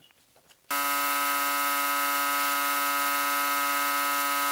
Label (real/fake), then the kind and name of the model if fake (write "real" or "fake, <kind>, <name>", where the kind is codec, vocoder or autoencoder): real